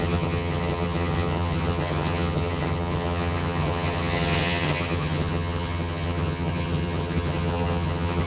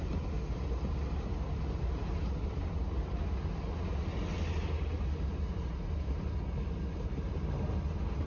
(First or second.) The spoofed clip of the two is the first